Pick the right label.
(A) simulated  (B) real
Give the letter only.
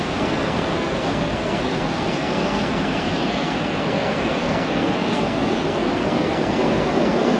A